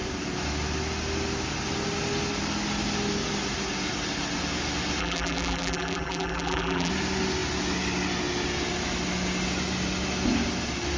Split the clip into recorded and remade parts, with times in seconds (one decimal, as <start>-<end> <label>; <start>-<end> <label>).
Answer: 0.0-5.0 recorded; 5.0-6.9 remade; 6.9-11.0 recorded